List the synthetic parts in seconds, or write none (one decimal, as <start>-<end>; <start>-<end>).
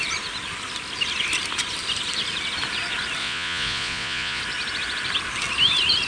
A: 3.2-4.4